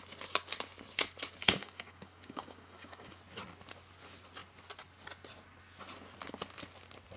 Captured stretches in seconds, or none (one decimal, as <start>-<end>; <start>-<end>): 0.0-1.4; 3.2-7.2